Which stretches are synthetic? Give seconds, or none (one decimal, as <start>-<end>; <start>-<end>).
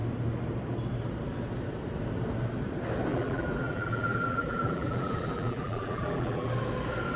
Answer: 3.1-6.5